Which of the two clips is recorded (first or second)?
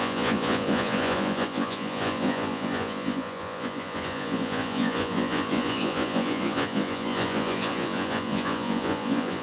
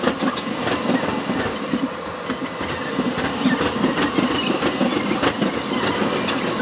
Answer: second